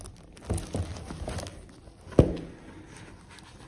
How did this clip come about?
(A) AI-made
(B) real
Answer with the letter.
B